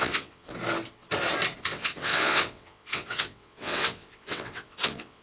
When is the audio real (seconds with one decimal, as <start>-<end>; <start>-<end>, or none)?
0.5-1.6